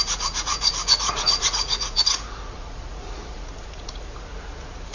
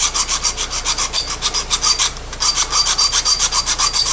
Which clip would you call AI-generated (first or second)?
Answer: first